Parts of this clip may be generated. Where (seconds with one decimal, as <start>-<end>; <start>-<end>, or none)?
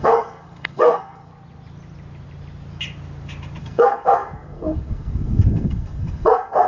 0.0-1.3; 3.6-6.7